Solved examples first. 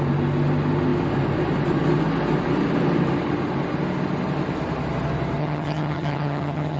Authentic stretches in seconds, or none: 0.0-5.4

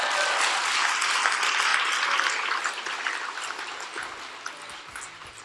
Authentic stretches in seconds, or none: 0.0-5.4

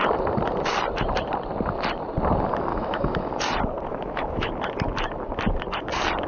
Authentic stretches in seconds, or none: 0.0-2.7; 3.3-3.9; 4.5-6.3

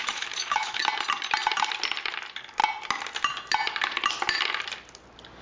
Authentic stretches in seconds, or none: 0.8-5.4

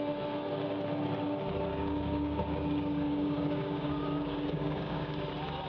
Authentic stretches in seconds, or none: 0.0-1.7; 5.1-5.7

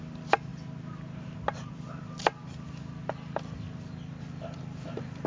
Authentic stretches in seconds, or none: 0.0-5.3

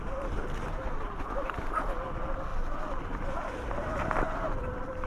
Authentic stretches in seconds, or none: 0.0-5.1